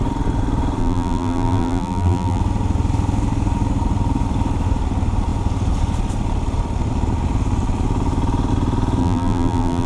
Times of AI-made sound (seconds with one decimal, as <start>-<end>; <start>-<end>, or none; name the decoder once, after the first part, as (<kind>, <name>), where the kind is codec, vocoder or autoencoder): 0.8-2.4 (vocoder, BigVGAN v2); 9.0-9.9